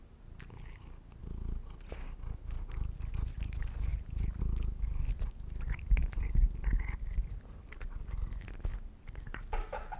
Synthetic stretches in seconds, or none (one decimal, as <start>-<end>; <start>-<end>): none